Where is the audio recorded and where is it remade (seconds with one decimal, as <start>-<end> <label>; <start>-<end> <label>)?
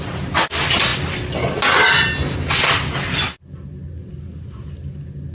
0.0-5.3 recorded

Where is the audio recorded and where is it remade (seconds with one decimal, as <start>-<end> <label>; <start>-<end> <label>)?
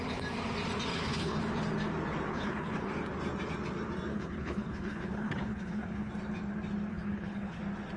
0.0-0.9 recorded; 0.9-1.4 remade; 1.4-2.3 recorded; 2.3-2.9 remade; 2.9-4.1 recorded; 4.1-6.1 remade; 6.1-6.9 recorded; 6.9-7.6 remade; 7.6-8.0 recorded